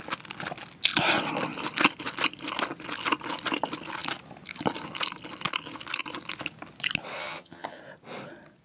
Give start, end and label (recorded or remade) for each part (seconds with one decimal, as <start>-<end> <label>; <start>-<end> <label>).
0.0-7.2 recorded; 7.2-7.8 remade; 7.8-8.6 recorded